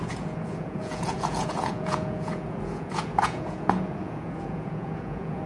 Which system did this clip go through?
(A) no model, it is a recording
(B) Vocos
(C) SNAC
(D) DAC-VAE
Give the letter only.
B